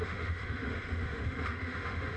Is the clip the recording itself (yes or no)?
no